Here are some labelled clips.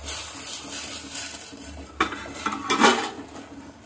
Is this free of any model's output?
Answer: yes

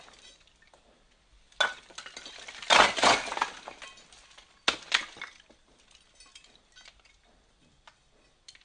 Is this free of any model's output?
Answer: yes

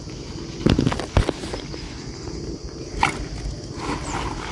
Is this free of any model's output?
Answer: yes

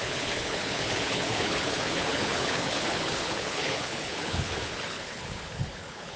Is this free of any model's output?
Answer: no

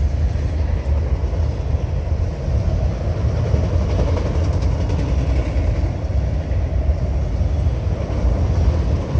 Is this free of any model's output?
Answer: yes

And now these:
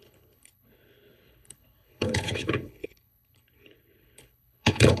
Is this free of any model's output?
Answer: no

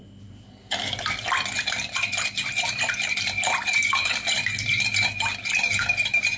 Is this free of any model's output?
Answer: yes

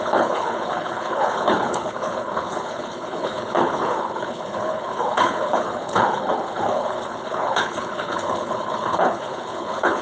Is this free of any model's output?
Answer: no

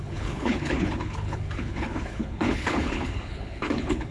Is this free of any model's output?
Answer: no